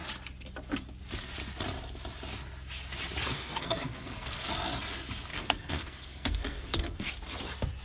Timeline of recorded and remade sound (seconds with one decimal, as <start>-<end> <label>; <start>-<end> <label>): 0.0-3.2 recorded; 3.2-4.5 remade; 4.5-5.3 recorded; 5.3-7.1 remade; 7.1-7.8 recorded